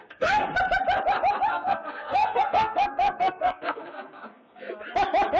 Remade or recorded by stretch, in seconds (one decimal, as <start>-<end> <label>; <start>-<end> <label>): 0.0-0.5 remade; 0.5-1.5 recorded; 1.5-4.7 remade; 4.7-5.4 recorded